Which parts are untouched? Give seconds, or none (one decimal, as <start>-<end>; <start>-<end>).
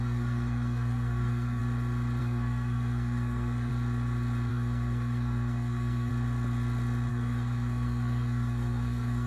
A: 1.6-2.2; 3.7-4.5; 6.1-7.1